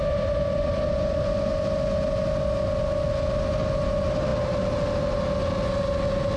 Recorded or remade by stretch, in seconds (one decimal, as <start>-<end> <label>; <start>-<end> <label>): 0.0-6.4 recorded

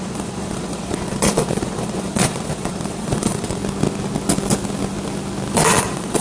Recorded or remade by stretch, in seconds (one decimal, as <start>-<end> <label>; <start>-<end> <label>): 0.0-3.6 remade; 3.6-5.5 recorded; 5.5-6.2 remade

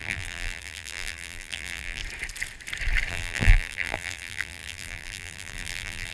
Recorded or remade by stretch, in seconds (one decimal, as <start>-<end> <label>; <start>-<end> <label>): 0.0-2.0 remade; 2.0-3.1 recorded; 3.1-6.1 remade